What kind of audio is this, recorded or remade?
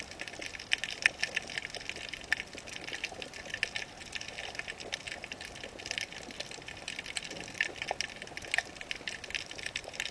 recorded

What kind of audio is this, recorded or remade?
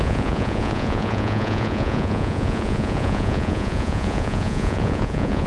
remade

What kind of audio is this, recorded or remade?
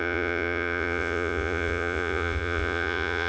remade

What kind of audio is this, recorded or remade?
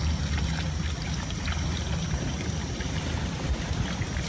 recorded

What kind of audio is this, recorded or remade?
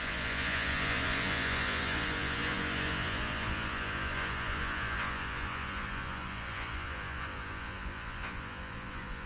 remade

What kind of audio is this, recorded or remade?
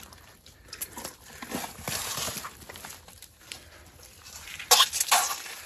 recorded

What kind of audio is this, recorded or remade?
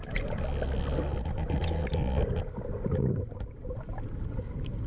recorded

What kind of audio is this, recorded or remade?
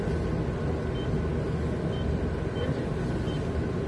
recorded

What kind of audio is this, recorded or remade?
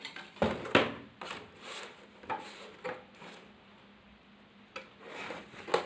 recorded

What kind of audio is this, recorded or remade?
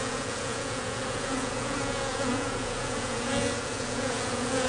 remade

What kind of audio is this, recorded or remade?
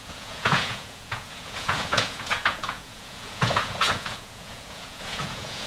remade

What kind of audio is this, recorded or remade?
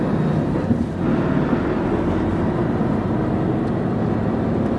recorded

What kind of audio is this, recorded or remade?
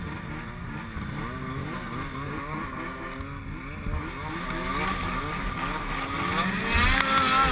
recorded